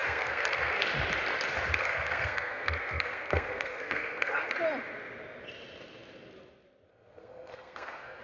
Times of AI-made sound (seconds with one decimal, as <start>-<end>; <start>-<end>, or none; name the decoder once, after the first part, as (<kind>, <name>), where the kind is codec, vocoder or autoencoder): 0.0-0.8 (codec, SNAC); 1.8-4.5; 6.9-8.2